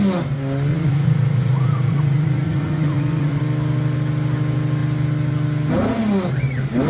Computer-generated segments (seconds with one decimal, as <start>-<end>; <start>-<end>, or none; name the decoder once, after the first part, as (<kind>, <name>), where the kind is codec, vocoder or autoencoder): 0.7-3.4 (vocoder, Vocos)